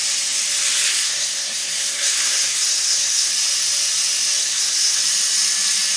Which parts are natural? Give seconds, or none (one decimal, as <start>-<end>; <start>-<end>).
0.0-0.9; 3.3-4.4; 5.0-6.0